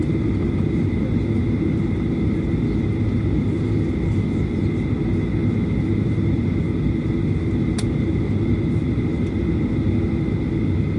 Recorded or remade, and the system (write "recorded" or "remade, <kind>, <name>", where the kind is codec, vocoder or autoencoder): recorded